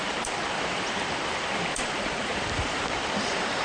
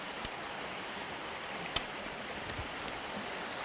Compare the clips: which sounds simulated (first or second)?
first